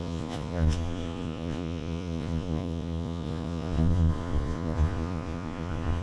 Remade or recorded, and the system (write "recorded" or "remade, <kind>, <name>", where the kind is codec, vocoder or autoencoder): remade, vocoder, Vocos